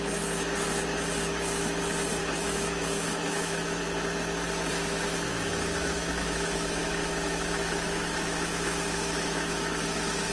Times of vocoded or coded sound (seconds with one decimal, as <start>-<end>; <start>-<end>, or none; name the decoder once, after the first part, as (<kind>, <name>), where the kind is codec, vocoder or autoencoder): 1.3-1.8 (autoencoder, DAC-VAE); 2.2-3.8; 5.3-10.3